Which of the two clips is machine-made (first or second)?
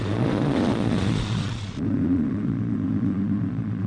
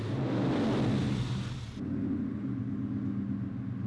first